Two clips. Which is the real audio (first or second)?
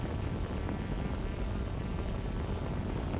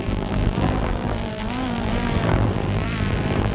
first